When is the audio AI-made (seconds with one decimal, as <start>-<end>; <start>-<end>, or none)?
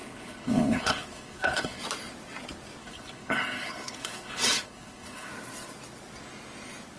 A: 0.0-1.8; 2.8-5.3